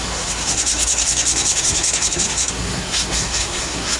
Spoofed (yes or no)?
yes